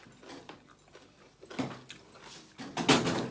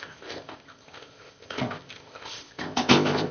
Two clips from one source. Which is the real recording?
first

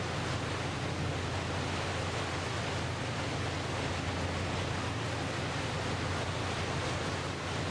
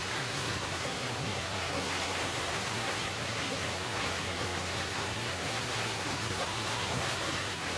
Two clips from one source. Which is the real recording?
first